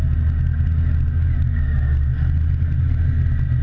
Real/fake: real